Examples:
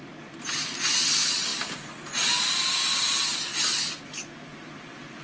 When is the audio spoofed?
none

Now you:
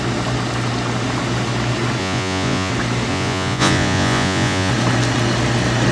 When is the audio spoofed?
2.0-2.7 (vocoder, Vocos); 3.1-4.7

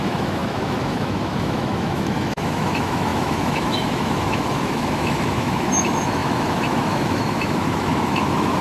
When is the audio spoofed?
0.0-8.6 (autoencoder, DAC-VAE)